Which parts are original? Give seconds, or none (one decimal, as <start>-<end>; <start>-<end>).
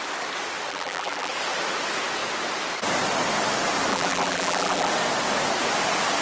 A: 0.0-0.7; 1.3-3.9; 4.9-6.2